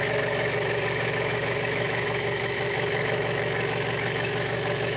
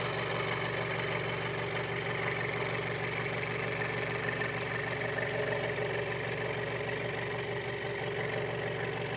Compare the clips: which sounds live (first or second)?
second